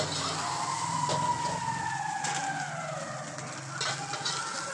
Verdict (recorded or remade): recorded